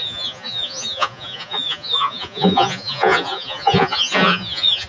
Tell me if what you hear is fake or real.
fake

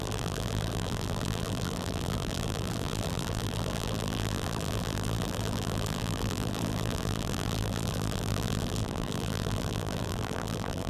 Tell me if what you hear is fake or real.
fake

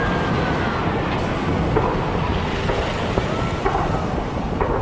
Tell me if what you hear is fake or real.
real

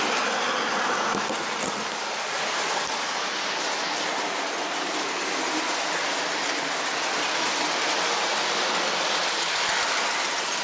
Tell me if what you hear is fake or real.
real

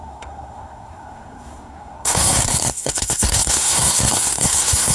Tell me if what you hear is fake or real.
fake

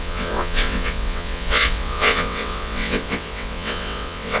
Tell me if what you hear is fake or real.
fake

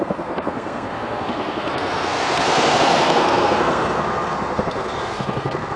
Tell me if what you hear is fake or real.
fake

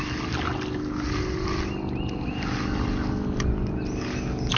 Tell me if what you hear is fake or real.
real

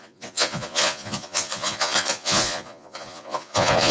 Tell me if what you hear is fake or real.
fake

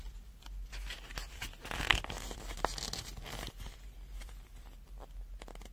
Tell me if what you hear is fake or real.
real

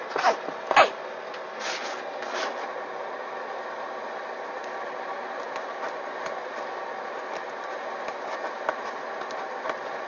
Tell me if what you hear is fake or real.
real